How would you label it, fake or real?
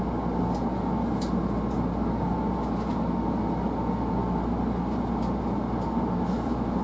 real